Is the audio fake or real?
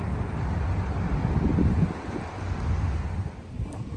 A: real